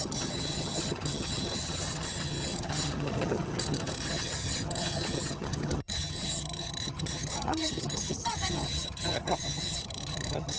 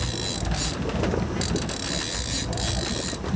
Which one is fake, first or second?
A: first